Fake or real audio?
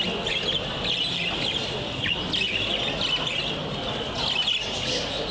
real